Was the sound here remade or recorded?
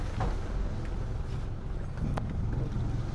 recorded